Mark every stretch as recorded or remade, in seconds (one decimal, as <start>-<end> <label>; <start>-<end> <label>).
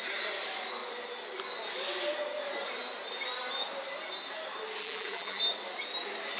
0.0-4.8 recorded; 4.8-5.4 remade; 5.4-6.4 recorded